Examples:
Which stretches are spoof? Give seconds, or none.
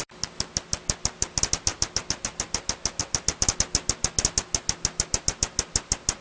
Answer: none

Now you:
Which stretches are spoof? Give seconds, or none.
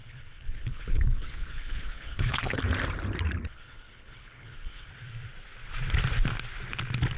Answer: 0.0-2.6; 3.5-4.9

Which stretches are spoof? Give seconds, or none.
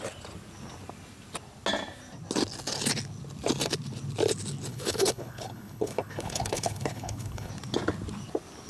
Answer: 4.7-7.5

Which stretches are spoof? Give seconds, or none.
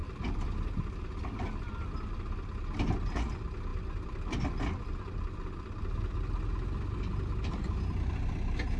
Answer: none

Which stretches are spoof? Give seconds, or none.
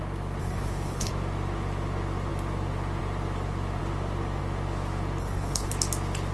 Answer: 0.4-1.1; 5.2-5.7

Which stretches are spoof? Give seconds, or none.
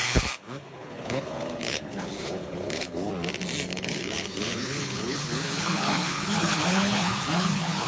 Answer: 0.0-3.1; 3.7-7.9